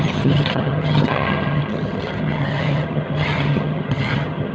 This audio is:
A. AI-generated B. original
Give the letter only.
A